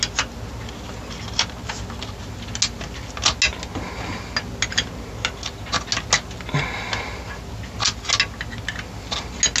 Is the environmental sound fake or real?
real